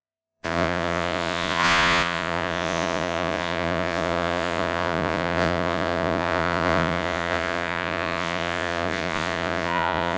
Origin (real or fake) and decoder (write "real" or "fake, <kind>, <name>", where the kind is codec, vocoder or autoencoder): fake, vocoder, Vocos